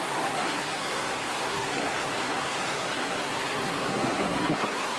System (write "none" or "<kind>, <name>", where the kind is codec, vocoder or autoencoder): codec, SNAC